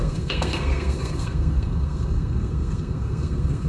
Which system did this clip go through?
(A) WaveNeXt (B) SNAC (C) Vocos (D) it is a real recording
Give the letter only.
B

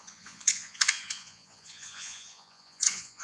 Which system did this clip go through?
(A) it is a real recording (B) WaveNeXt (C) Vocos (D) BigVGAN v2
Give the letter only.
C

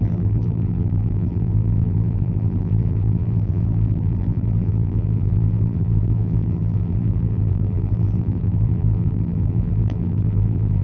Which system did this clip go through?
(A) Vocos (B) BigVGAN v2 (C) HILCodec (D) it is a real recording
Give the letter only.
B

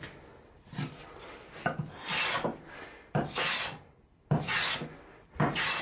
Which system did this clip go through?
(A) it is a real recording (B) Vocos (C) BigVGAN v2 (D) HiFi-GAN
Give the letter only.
A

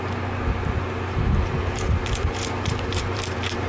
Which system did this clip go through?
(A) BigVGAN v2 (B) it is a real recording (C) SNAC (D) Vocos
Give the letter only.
A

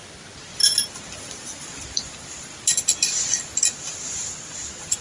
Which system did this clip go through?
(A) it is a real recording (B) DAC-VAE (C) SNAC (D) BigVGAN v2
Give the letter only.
A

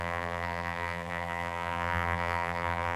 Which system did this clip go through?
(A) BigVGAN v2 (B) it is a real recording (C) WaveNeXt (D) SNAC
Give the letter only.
A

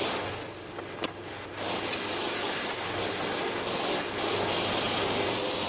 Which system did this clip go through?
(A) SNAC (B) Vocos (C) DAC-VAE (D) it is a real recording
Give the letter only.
D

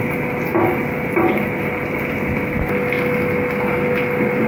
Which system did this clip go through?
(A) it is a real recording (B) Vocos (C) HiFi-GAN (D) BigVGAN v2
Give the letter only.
A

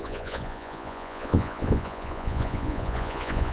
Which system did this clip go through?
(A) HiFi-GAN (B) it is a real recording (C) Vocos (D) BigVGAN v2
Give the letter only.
C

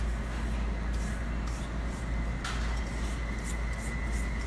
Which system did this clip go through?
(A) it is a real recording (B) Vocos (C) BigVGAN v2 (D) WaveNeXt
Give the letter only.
A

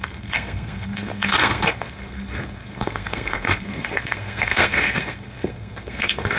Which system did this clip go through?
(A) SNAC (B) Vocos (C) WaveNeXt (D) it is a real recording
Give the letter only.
A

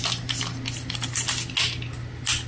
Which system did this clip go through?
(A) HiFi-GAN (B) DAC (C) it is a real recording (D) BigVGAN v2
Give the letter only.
C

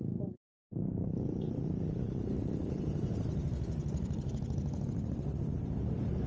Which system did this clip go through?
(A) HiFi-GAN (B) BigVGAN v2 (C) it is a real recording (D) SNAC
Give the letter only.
B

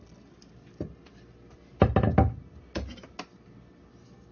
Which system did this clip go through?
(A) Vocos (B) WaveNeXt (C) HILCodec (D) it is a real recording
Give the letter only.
D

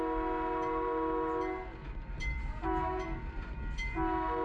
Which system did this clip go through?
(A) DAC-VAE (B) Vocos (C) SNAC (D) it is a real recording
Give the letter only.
D